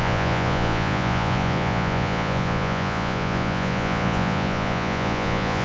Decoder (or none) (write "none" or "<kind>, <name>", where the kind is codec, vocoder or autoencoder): vocoder, Vocos